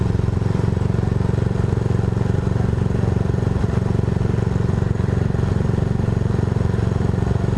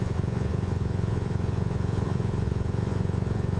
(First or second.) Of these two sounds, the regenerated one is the second